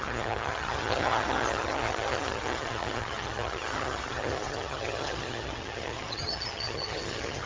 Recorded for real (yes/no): no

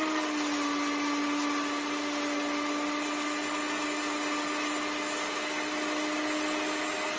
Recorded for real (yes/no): yes